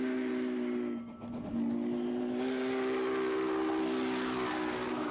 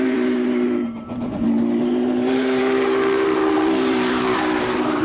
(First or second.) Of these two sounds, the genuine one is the first